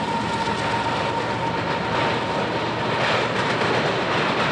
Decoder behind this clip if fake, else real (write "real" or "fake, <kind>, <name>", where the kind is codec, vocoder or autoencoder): real